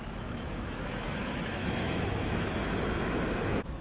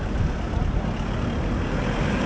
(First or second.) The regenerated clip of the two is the first